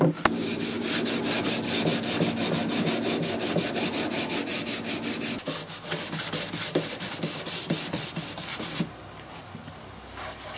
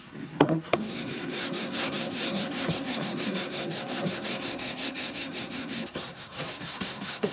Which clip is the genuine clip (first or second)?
first